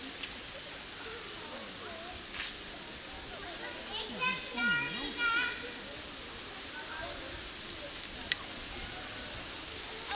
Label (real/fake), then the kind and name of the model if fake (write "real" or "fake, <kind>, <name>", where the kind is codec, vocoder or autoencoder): real